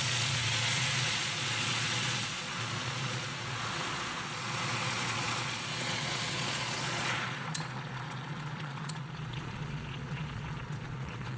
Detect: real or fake fake